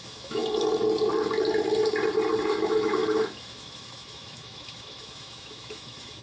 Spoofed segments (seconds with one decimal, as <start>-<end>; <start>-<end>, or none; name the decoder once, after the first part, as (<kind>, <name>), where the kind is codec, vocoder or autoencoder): 0.0-0.4 (autoencoder, DAC-VAE); 2.4-6.2